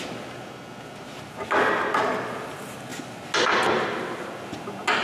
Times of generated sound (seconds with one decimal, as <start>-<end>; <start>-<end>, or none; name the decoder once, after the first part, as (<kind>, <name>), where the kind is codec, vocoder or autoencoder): none